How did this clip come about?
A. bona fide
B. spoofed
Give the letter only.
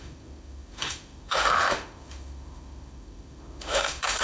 B